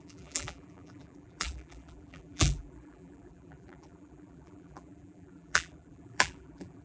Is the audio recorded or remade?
remade